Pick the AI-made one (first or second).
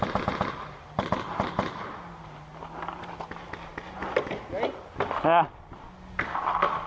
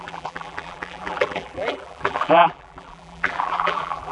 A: second